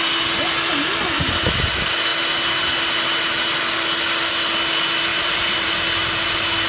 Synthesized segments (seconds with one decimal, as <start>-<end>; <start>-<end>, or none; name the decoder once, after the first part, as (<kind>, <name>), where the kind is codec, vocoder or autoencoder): 5.1-5.7 (vocoder, BigVGAN v2)